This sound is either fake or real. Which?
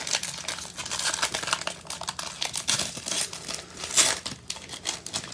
real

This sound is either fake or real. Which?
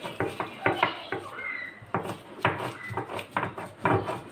real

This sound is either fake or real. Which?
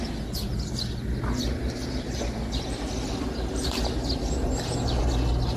real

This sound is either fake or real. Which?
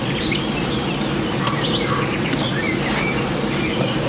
real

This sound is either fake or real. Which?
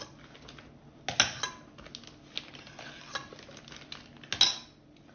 real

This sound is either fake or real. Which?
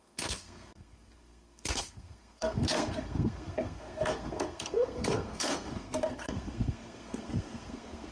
fake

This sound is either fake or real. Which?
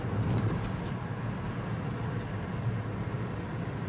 real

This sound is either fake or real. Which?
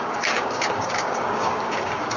fake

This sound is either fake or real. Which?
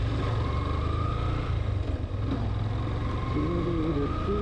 real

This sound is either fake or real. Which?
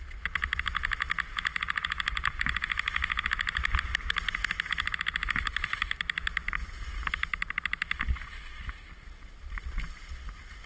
real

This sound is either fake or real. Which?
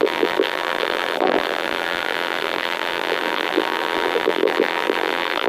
fake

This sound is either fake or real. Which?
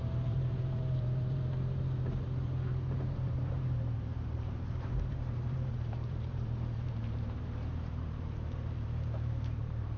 fake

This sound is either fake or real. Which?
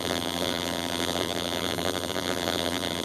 fake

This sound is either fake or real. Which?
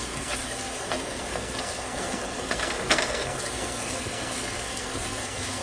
fake